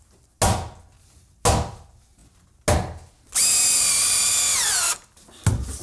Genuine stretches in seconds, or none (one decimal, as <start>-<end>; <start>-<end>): 0.0-5.8